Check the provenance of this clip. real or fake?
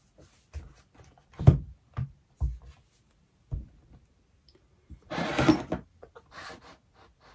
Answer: real